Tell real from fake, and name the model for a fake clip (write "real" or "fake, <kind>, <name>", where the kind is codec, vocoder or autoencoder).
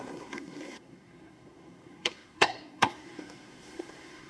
fake, codec, SNAC